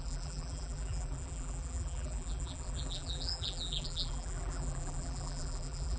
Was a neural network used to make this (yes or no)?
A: yes